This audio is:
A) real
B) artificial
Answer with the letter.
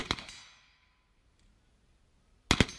A